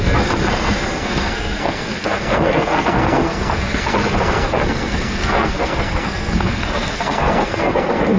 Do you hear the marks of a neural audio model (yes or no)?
yes